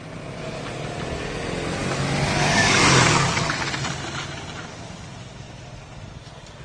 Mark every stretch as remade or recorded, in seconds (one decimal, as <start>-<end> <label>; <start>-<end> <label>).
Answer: 0.0-6.6 recorded